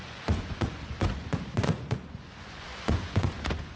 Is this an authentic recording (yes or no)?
no